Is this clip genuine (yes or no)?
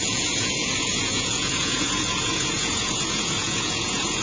no